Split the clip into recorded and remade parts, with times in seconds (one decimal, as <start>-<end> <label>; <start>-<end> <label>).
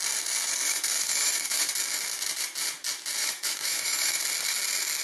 0.0-0.6 recorded; 0.6-1.7 remade; 1.7-3.2 recorded; 3.2-4.2 remade; 4.2-5.0 recorded